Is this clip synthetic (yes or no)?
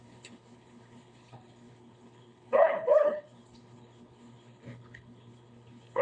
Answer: yes